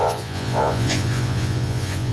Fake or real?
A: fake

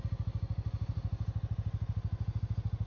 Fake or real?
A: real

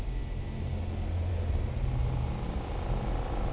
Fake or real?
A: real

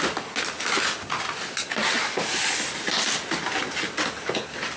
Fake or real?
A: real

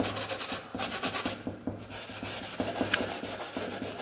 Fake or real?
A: real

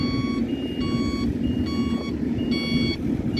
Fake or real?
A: real